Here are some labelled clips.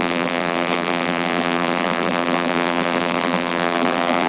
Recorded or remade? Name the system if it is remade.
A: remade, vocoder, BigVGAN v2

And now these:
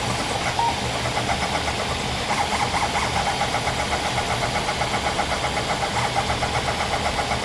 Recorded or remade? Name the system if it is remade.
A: recorded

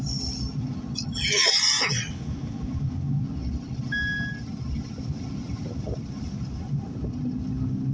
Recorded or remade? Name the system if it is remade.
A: recorded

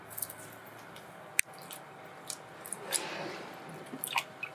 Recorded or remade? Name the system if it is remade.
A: recorded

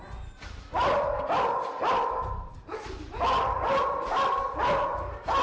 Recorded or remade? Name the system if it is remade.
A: recorded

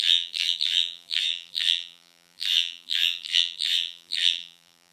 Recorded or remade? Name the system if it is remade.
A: remade, vocoder, BigVGAN v2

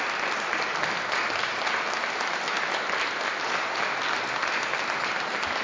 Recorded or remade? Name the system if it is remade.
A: recorded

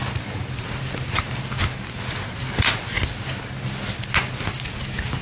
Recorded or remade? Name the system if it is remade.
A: recorded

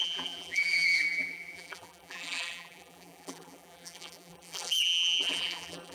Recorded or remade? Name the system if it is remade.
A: remade, vocoder, BigVGAN v2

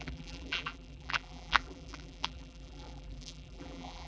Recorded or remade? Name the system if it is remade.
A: remade, vocoder, BigVGAN v2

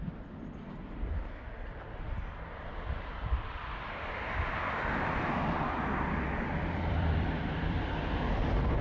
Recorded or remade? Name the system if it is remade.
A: remade, vocoder, BigVGAN v2